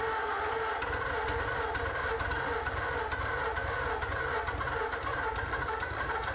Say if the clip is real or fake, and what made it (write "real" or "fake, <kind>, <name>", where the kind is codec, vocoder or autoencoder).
real